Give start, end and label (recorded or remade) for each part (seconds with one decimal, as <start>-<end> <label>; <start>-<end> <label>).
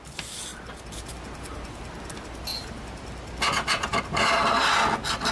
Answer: 0.0-2.5 recorded; 2.5-4.0 remade; 4.0-5.3 recorded